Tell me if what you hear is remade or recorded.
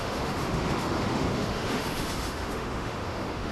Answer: remade